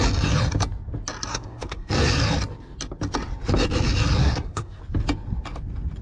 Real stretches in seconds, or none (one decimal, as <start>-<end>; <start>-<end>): 0.0-1.3; 1.9-4.2; 4.8-6.0